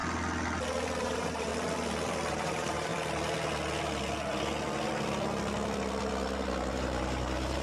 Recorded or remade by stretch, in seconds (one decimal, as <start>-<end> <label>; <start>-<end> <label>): 0.0-1.0 recorded; 1.0-1.5 remade; 1.5-2.3 recorded; 2.3-2.9 remade; 2.9-6.7 recorded; 6.7-7.6 remade